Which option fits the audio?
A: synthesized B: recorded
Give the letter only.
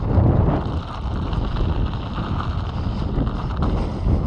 B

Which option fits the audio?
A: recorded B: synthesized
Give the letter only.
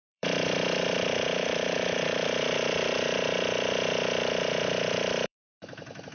B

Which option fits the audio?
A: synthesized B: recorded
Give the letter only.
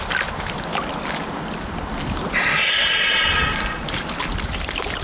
B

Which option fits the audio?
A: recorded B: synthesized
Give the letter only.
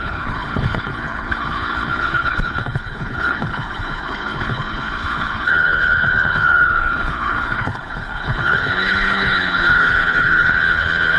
B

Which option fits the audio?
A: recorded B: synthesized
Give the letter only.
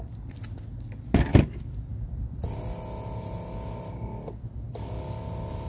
A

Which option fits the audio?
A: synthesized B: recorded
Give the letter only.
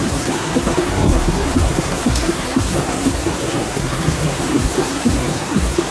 A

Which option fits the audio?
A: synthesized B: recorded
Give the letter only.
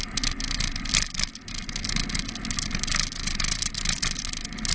B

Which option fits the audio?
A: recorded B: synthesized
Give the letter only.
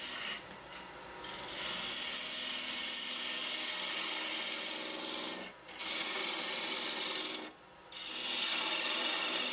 A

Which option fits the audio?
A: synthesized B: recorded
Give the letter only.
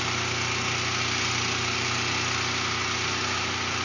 B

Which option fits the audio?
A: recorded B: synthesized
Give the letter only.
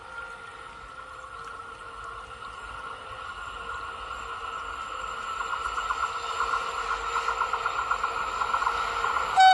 A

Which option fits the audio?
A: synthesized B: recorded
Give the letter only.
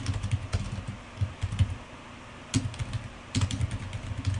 B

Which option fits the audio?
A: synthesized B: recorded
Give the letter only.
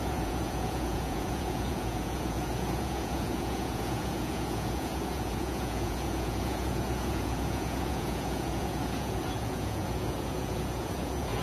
A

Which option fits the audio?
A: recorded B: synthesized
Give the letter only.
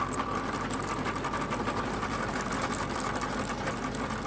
A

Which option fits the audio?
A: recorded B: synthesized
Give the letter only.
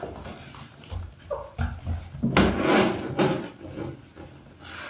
A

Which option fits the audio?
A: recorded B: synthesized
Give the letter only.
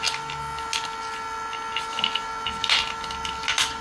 A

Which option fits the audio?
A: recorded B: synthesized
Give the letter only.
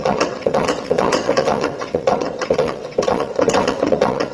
B